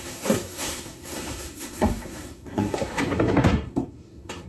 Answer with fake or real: fake